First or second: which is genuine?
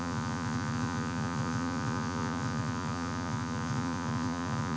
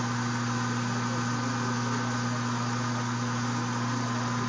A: second